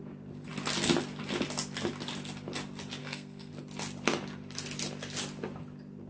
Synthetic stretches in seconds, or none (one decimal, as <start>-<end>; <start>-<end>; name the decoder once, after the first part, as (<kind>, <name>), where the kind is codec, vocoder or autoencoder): 3.0-3.5 (codec, SNAC)